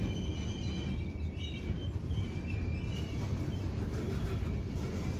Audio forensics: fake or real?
real